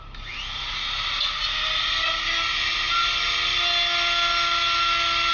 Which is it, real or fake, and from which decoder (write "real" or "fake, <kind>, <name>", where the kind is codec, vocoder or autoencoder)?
real